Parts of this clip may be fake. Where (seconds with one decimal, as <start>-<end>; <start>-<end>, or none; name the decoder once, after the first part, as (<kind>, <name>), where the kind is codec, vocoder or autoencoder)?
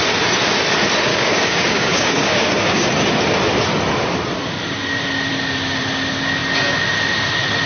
1.1-2.9 (codec, DAC)